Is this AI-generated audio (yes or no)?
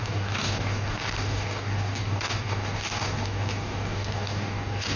yes